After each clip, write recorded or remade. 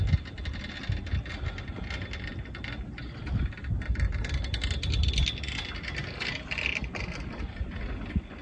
recorded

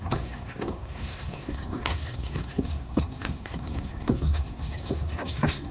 remade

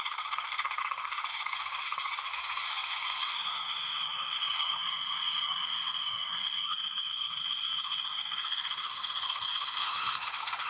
remade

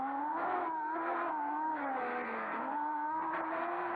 remade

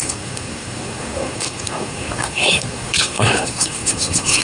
remade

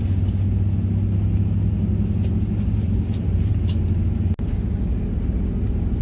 recorded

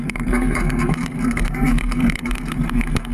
remade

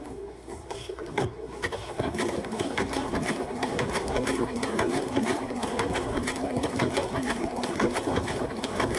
remade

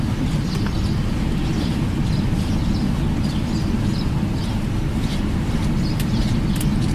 recorded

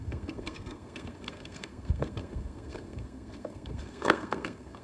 remade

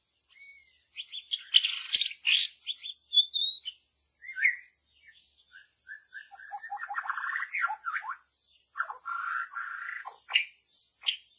recorded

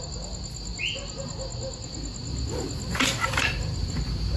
recorded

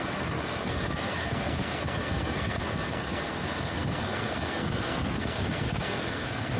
remade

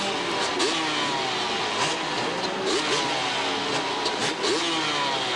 recorded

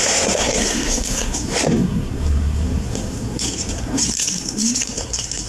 remade